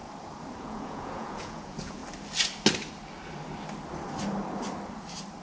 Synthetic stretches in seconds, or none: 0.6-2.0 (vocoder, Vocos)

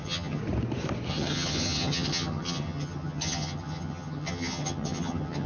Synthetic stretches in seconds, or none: 0.0-0.4 (vocoder, HiFi-GAN); 1.1-5.5